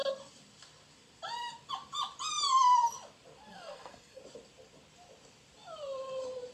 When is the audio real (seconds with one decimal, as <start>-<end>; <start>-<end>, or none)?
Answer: 0.0-3.5; 4.2-6.5

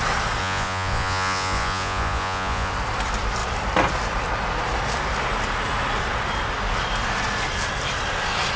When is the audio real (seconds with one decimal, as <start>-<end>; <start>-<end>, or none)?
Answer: 0.0-0.4; 2.7-8.6

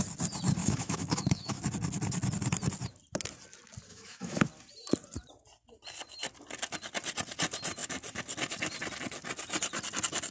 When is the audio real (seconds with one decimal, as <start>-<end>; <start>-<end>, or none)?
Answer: 0.0-0.6; 1.6-3.9; 4.4-10.3

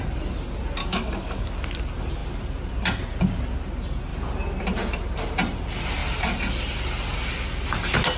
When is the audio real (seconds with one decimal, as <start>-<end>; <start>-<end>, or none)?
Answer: 0.0-0.8; 1.4-8.2